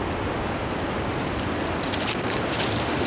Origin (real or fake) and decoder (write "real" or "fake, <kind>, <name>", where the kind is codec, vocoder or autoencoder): real